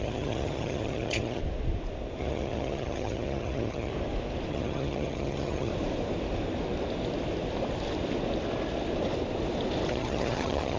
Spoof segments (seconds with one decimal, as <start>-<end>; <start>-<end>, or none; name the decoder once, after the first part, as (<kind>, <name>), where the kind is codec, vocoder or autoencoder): 0.0-1.4 (vocoder, HiFi-GAN); 2.2-3.9; 4.5-5.7; 9.9-10.8